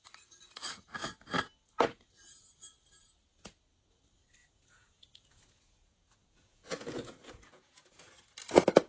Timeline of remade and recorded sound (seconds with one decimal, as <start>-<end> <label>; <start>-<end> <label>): 0.0-4.4 recorded; 4.4-8.0 remade; 8.0-8.9 recorded